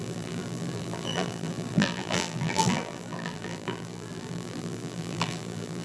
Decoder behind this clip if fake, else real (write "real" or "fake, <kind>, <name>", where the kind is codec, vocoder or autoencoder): fake, vocoder, BigVGAN v2